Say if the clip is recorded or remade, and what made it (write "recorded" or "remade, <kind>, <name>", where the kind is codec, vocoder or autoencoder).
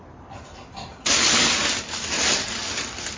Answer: recorded